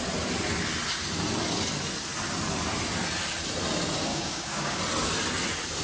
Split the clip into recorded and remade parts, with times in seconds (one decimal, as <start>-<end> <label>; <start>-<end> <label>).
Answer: 0.0-4.1 recorded; 4.1-4.8 remade; 4.8-5.8 recorded